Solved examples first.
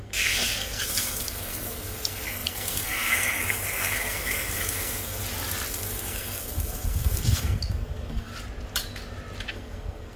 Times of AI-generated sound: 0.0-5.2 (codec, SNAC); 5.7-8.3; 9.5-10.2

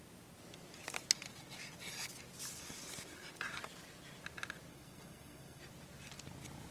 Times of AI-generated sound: 4.7-5.6 (codec, SNAC)

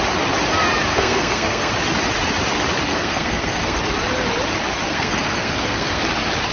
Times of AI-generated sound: 0.9-1.7 (codec, SNAC); 2.9-3.8; 4.9-6.0

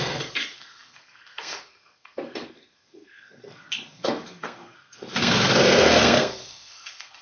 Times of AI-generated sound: 0.0-7.2 (codec, SNAC)

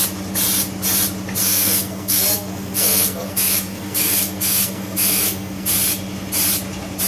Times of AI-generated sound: 1.4-5.7 (codec, SNAC)

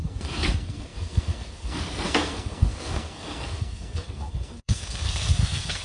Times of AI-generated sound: 0.0-5.8 (codec, SNAC)